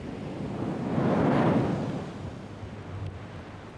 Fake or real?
real